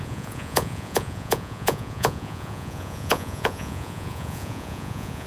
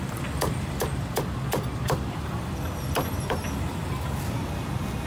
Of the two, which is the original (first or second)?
second